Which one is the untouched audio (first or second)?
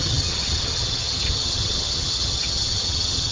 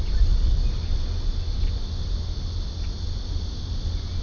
second